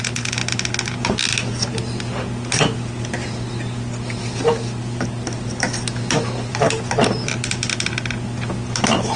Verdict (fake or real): real